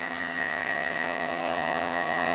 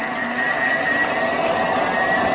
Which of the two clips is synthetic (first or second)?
first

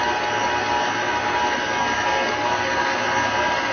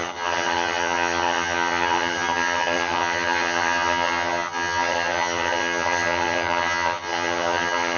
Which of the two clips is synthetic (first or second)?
second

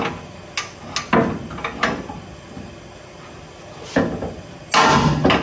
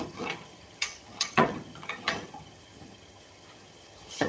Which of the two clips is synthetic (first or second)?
second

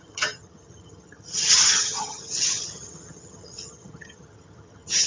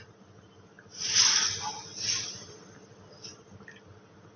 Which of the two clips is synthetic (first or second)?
first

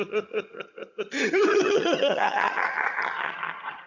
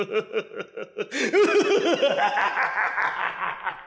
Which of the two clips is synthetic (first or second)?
first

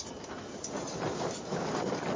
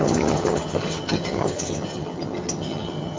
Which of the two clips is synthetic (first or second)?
second